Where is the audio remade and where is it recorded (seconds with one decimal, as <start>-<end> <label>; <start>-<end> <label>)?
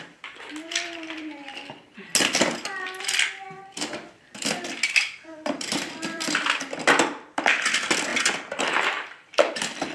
0.0-2.1 remade; 2.1-3.1 recorded; 3.1-8.1 remade; 8.1-9.1 recorded; 9.1-9.9 remade